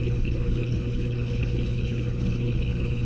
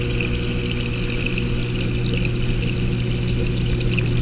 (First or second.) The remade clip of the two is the first